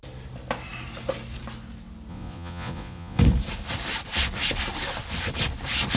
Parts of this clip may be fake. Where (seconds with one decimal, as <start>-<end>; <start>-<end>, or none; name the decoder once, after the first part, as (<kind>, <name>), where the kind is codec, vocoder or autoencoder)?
2.1-3.2 (vocoder, Vocos)